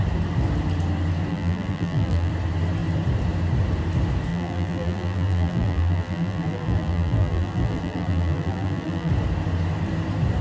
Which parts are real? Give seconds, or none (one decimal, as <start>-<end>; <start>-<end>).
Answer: 0.0-1.3; 2.3-4.3; 9.1-10.4